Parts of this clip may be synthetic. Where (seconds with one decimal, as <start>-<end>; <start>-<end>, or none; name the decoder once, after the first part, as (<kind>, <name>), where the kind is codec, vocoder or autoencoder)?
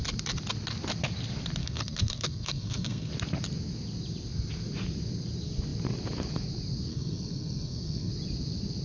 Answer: 1.6-3.1 (codec, SNAC); 6.9-8.1